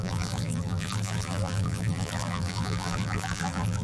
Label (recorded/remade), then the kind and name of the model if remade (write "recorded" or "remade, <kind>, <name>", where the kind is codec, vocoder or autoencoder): remade, vocoder, BigVGAN v2